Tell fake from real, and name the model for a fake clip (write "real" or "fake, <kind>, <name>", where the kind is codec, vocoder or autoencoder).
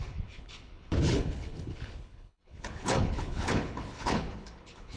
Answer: fake, codec, HILCodec